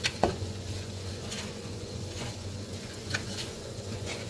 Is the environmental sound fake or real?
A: fake